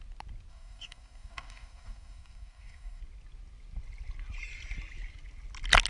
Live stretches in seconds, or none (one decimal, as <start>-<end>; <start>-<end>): 0.0-0.5; 3.0-5.9